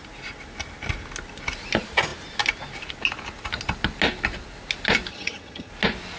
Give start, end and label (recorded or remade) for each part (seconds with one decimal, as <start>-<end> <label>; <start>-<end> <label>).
0.0-5.1 recorded; 5.1-5.7 remade; 5.7-6.2 recorded